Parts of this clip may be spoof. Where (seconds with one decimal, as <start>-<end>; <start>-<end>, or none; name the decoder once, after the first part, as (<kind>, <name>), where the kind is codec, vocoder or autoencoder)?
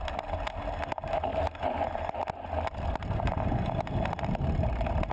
none